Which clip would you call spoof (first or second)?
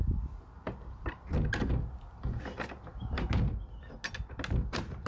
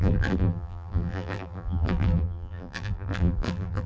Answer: second